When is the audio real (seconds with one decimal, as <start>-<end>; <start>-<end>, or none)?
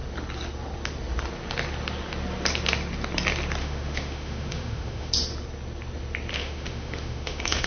0.0-3.6; 5.1-6.3